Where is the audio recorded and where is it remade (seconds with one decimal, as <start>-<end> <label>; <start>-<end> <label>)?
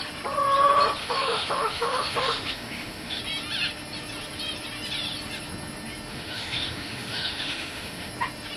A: 0.0-1.0 recorded; 1.0-3.2 remade; 3.2-6.1 recorded; 6.1-8.1 remade; 8.1-8.6 recorded